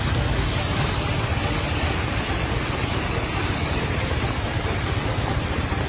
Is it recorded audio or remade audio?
recorded